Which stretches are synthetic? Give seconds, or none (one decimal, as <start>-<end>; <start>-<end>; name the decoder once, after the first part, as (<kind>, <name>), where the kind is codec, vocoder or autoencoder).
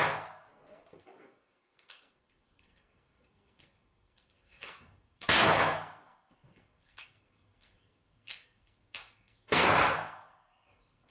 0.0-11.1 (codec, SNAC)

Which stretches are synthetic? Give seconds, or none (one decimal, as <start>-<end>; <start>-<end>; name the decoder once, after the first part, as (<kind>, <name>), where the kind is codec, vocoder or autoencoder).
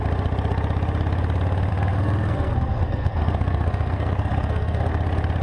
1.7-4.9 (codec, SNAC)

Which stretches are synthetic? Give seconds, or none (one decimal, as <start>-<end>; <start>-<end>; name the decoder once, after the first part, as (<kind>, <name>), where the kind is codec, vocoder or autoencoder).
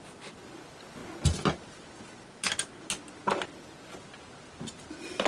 none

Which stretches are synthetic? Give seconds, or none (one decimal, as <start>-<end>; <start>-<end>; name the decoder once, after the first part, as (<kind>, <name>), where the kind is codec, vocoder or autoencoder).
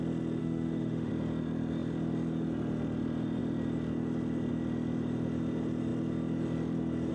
0.4-1.1 (autoencoder, DAC-VAE)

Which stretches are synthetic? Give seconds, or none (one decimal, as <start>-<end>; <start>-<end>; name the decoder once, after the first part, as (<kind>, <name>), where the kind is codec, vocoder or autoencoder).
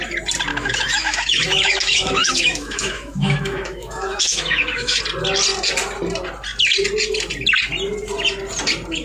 0.5-5.0 (autoencoder, DAC-VAE)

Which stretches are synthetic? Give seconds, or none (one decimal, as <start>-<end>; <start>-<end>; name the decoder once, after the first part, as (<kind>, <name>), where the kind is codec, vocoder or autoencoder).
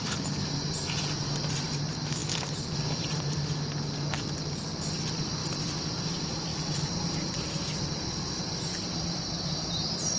6.5-9.3 (vocoder, BigVGAN v2)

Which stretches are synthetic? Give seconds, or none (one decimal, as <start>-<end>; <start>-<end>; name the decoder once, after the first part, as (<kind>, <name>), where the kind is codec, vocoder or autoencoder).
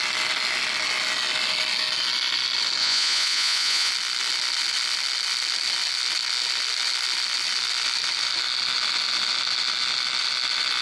2.8-3.9 (vocoder, Vocos)